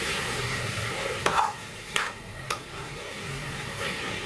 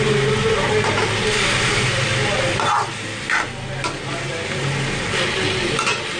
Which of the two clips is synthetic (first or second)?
first